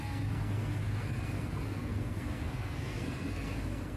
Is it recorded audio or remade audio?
remade